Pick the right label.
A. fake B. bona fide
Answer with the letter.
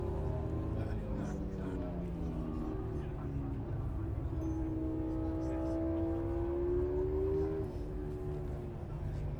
B